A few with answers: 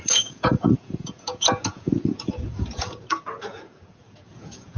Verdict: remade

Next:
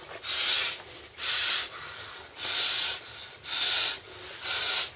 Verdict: recorded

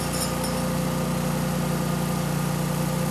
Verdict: recorded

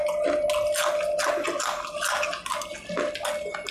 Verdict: recorded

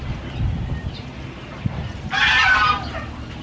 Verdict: recorded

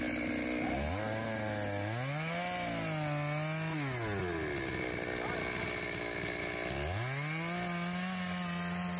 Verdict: recorded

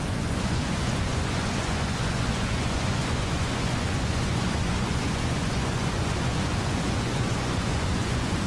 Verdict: remade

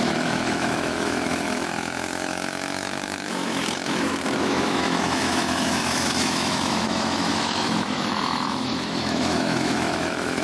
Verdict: remade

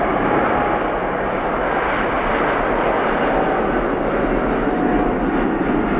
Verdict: recorded